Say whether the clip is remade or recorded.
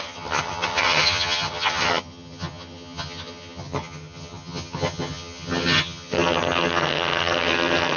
remade